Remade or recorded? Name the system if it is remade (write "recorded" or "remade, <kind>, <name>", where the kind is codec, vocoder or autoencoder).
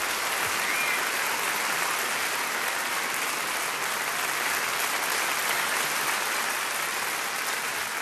recorded